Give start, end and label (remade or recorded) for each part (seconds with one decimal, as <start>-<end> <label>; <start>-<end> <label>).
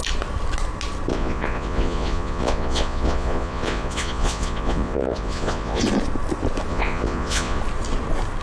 0.0-1.1 recorded; 1.1-5.8 remade; 5.8-6.7 recorded; 6.7-7.6 remade; 7.6-8.4 recorded